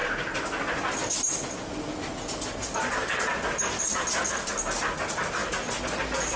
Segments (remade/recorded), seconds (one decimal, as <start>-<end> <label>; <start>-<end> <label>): 0.0-6.4 recorded